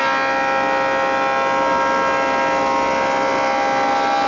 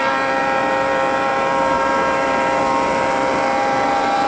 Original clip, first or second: first